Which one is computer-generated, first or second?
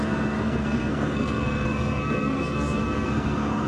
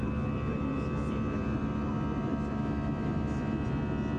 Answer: first